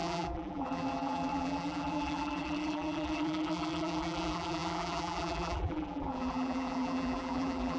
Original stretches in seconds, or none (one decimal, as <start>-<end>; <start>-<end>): none

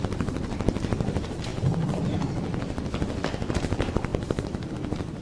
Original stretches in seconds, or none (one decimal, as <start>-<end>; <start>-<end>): 1.5-3.5

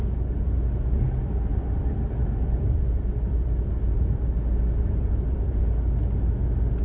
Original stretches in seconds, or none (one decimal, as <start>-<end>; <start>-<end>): 0.0-1.5; 5.6-6.8